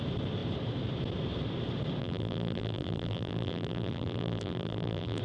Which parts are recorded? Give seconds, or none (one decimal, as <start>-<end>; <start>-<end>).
0.0-2.0

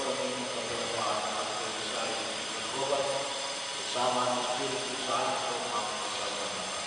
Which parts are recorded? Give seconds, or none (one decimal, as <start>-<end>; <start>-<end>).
0.0-1.7; 3.2-6.9

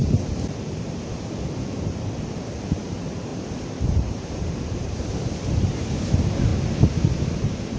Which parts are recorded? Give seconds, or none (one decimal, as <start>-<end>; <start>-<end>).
0.0-2.7; 3.3-3.8; 6.5-7.8

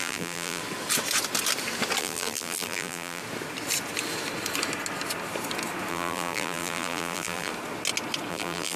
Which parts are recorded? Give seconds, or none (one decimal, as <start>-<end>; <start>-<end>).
0.6-2.0; 3.2-5.9; 7.5-8.3

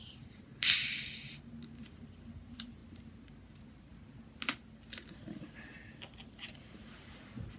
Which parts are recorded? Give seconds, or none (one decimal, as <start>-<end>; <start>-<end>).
0.5-1.7; 2.8-3.5; 3.9-6.3

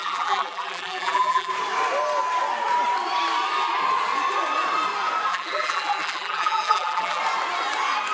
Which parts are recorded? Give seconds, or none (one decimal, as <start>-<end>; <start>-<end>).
1.5-5.3; 7.2-8.1

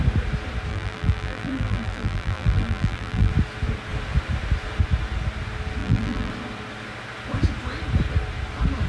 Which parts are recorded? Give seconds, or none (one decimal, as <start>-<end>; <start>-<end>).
0.0-0.7; 3.3-5.8; 6.3-8.9